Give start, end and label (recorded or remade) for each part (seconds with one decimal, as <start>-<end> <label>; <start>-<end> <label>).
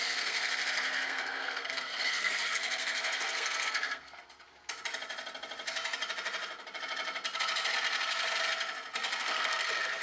0.0-4.2 remade; 4.2-9.2 recorded; 9.2-10.0 remade